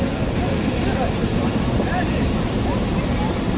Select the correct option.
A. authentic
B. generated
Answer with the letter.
A